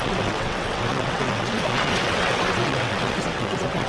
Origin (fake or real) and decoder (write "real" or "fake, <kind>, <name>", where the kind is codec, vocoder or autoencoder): fake, vocoder, WaveNeXt